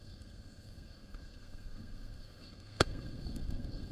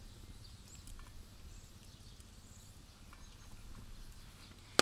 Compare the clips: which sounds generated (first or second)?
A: first